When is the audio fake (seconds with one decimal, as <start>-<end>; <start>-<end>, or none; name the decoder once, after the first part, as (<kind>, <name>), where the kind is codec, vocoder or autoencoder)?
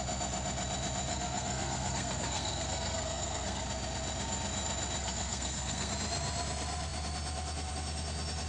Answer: 1.1-3.6 (codec, SNAC); 5.0-5.9